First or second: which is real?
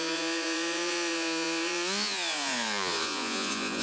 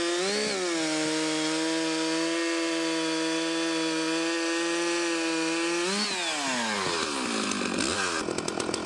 second